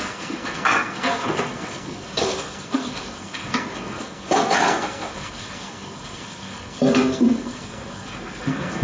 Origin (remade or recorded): remade